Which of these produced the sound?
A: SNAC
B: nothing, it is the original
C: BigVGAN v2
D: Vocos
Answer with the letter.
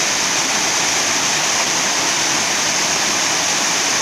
C